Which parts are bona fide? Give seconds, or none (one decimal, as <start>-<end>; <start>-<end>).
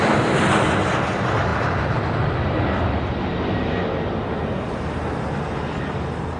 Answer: 0.0-6.4